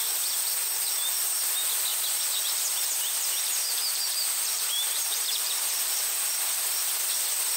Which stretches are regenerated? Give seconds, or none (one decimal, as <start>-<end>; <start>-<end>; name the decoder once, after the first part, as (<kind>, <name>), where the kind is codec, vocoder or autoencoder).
4.5-5.6 (vocoder, BigVGAN v2)